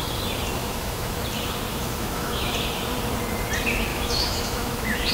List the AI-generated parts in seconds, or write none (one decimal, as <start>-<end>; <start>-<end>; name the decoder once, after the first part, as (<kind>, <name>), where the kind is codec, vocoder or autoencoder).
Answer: 0.6-1.2 (autoencoder, DAC-VAE); 1.7-2.5; 3.9-5.1